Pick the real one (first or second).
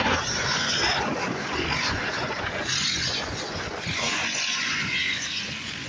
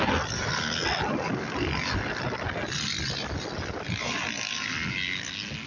second